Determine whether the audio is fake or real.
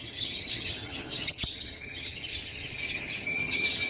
fake